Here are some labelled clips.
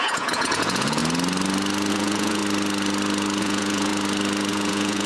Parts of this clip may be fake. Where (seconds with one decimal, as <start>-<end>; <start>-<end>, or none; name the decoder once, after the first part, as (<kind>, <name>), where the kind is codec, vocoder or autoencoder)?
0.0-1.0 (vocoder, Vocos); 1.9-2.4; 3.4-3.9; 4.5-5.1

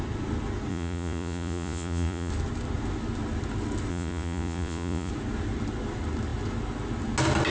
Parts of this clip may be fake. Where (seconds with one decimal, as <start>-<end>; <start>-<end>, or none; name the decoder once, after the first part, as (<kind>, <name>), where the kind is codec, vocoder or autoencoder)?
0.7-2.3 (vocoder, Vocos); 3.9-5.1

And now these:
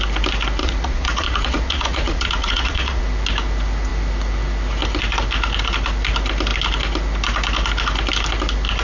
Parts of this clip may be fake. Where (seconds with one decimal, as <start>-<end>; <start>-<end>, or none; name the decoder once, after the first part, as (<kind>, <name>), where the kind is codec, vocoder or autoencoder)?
0.6-3.0 (vocoder, Vocos)

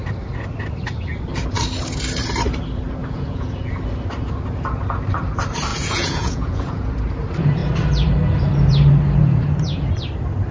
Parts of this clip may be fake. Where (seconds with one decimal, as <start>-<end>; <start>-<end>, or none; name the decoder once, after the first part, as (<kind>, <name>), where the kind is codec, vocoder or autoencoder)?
3.0-3.8 (vocoder, Vocos); 5.7-6.9

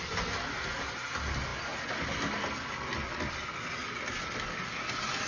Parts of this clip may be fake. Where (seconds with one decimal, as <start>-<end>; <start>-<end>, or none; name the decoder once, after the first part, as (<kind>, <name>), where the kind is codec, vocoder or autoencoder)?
none

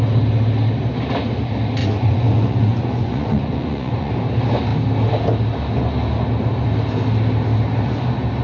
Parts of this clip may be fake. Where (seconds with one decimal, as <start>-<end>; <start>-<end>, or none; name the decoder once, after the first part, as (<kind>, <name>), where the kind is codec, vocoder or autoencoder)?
1.8-4.1 (vocoder, Vocos)